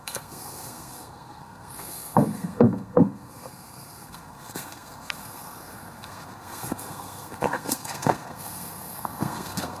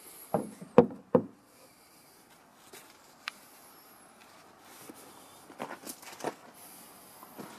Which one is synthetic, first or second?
first